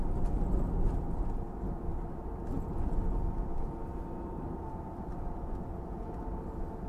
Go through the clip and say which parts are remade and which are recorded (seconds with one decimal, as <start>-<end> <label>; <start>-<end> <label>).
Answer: 0.0-6.9 recorded